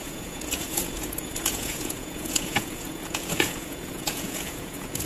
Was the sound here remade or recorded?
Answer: remade